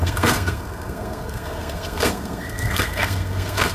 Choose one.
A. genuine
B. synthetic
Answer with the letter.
B